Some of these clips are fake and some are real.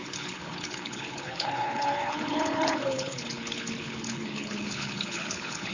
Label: fake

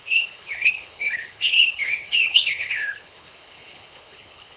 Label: fake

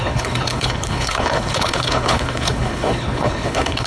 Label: fake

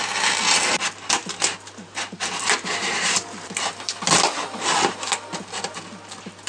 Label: real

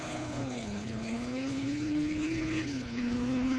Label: fake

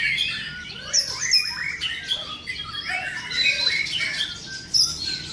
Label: real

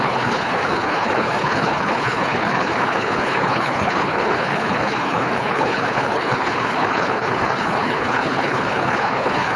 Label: fake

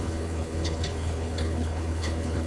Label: fake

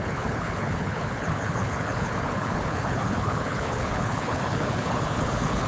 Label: fake